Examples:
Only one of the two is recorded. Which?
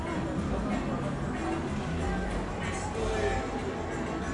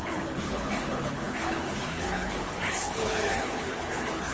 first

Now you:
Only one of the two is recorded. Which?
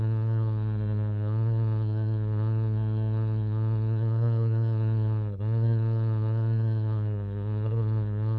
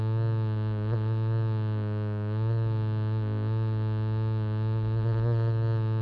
second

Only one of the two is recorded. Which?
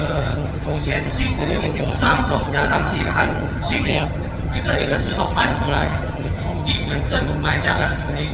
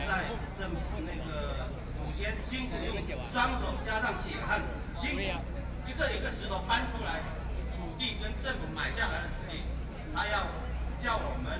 second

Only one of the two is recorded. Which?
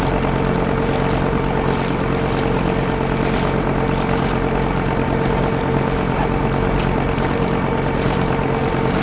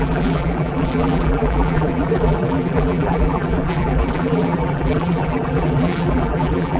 first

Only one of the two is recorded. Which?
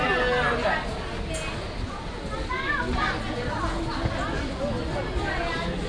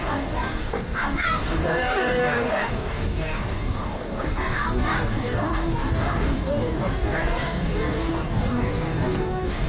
first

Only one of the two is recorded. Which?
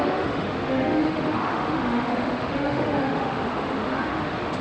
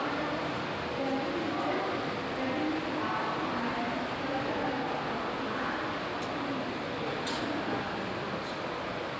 second